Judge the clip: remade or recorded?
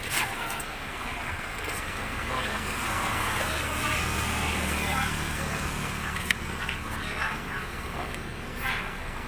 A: remade